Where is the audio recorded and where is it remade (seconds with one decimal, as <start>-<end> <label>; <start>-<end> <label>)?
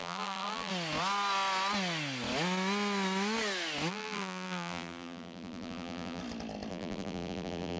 0.0-0.7 remade; 0.7-3.9 recorded; 3.9-6.2 remade; 6.2-6.7 recorded; 6.7-7.8 remade